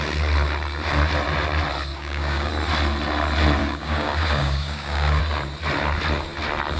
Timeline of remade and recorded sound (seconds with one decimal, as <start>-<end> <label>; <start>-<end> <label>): 0.0-1.9 recorded; 1.9-2.5 remade; 2.5-3.6 recorded; 3.6-5.2 remade; 5.2-6.8 recorded